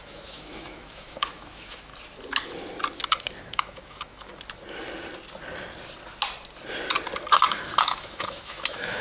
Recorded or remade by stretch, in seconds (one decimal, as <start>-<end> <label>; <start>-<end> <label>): 0.0-1.9 remade; 1.9-3.4 recorded; 3.4-4.3 remade; 4.3-7.5 recorded; 7.5-9.0 remade